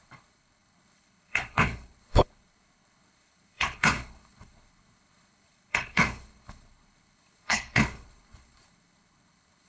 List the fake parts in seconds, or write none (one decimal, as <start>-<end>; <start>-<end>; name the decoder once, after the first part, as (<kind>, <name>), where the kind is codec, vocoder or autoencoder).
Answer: 0.0-9.7 (codec, HILCodec)